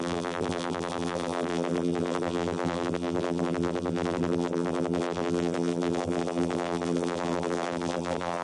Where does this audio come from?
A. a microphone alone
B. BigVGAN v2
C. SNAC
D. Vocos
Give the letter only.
B